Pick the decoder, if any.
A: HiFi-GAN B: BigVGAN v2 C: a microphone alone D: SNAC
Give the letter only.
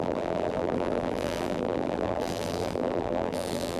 B